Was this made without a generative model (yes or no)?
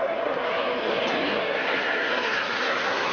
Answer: no